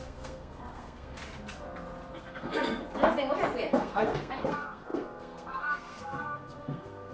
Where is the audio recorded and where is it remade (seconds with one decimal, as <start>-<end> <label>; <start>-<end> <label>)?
0.0-1.2 remade; 1.2-2.2 recorded; 2.2-2.8 remade; 2.8-3.7 recorded; 3.7-7.1 remade